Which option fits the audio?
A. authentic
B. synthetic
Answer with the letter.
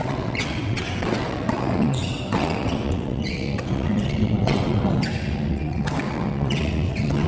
B